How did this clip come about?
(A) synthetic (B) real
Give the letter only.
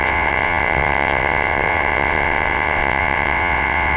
A